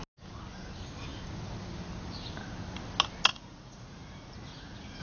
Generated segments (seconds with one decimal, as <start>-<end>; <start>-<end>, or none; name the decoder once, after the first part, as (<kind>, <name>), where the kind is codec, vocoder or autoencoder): 3.3-5.0 (vocoder, Vocos)